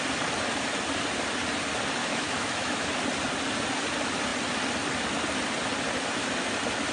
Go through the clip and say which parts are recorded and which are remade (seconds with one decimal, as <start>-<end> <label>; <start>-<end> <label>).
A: 0.0-2.0 recorded; 2.0-2.9 remade; 2.9-6.9 recorded

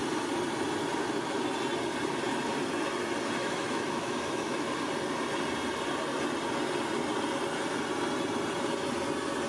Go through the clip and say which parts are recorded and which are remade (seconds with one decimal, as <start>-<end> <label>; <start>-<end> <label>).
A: 0.0-3.4 recorded; 3.4-4.7 remade; 4.7-9.5 recorded

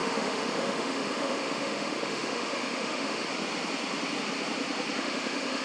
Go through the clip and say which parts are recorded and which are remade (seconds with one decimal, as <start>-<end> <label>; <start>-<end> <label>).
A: 0.0-3.3 remade; 3.3-5.0 recorded; 5.0-5.6 remade